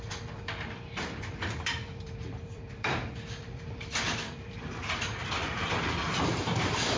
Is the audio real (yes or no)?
no